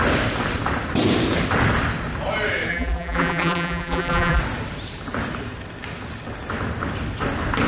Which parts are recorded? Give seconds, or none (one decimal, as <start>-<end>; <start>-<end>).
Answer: 0.0-2.7; 4.4-7.7